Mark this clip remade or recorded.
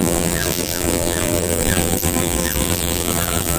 remade